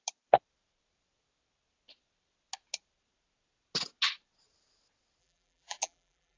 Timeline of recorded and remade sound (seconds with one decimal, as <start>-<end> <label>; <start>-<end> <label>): 0.0-5.2 recorded; 5.2-6.4 remade